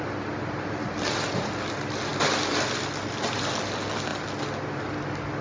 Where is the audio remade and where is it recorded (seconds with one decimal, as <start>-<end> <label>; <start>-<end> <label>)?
0.0-5.4 recorded